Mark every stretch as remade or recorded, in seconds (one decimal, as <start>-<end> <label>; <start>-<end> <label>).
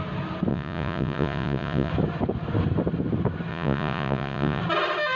0.0-0.5 recorded; 0.5-1.9 remade; 1.9-3.5 recorded; 3.5-4.6 remade; 4.6-5.2 recorded